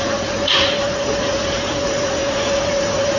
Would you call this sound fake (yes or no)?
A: yes